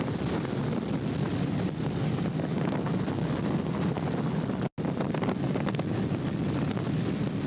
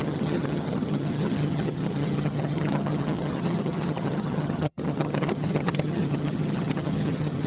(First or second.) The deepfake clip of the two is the second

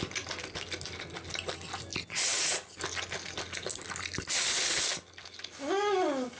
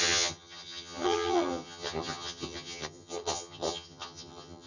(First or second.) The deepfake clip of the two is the second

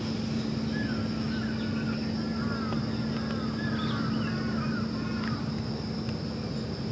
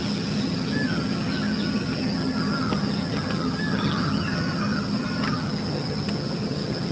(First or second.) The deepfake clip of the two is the second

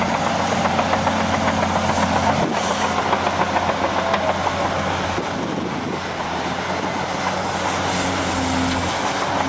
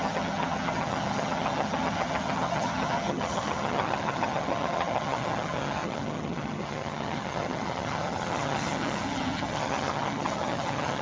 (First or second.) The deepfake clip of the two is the second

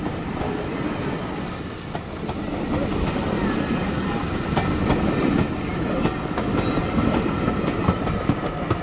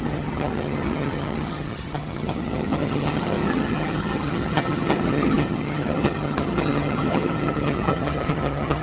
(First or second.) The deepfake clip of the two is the second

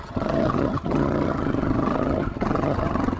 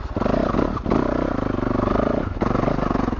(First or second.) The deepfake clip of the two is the first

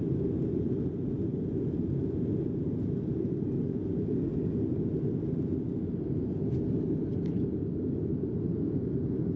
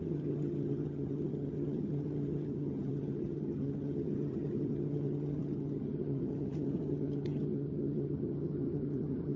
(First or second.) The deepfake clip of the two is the second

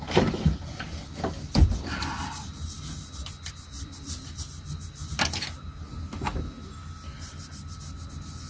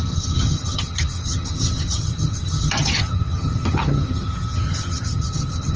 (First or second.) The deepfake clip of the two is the second